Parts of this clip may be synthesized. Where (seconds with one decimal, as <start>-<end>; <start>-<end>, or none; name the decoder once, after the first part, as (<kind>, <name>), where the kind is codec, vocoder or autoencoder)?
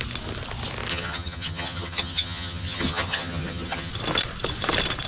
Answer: 0.9-3.9 (vocoder, HiFi-GAN)